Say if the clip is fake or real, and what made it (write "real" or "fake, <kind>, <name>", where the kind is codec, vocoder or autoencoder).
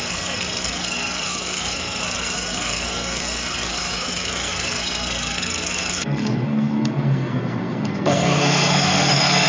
fake, codec, SNAC